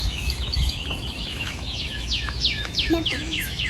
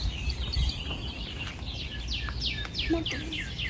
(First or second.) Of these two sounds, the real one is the second